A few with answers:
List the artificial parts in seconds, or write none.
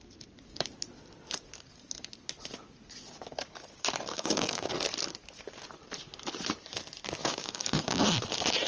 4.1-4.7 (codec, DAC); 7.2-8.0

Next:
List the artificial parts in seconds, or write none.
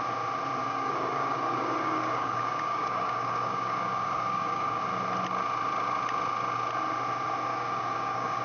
0.6-4.8 (codec, DAC); 7.5-8.4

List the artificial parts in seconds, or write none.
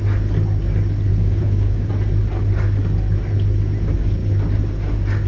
1.1-1.9 (codec, DAC)